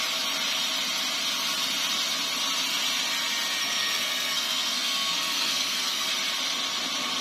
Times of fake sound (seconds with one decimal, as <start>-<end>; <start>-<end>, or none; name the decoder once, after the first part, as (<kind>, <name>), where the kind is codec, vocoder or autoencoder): 3.6-6.1 (codec, SNAC)